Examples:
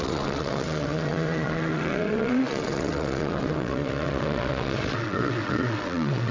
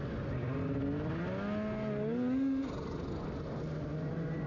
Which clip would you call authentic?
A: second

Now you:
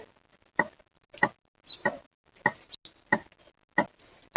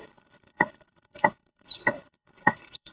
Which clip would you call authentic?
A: first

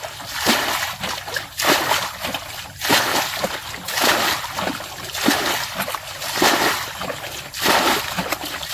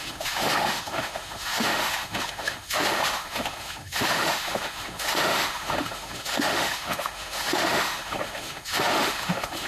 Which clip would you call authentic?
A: first